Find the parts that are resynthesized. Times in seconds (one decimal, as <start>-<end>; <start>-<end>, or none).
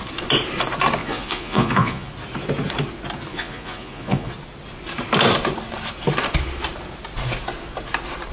1.0-2.1; 3.3-4.3